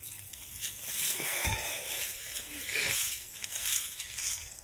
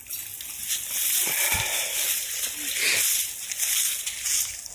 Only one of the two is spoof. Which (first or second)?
first